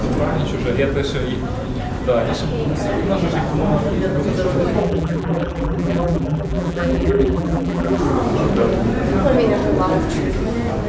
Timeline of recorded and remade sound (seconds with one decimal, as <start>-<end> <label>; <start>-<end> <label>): 0.0-4.8 recorded; 4.8-8.0 remade; 8.0-10.9 recorded